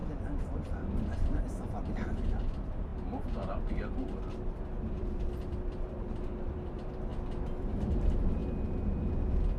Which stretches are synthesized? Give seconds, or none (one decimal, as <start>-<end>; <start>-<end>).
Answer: 1.8-7.1; 7.6-8.4